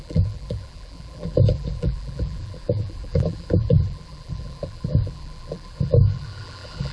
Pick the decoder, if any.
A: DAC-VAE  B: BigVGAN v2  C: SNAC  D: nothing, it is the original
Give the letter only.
B